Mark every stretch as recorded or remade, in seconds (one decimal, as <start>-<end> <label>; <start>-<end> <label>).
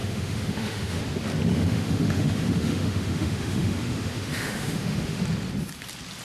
0.0-1.0 remade; 1.0-1.5 recorded; 1.5-5.2 remade; 5.2-6.2 recorded